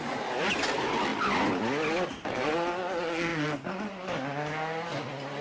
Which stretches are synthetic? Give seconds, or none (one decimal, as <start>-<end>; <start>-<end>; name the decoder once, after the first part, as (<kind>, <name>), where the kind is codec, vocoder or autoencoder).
none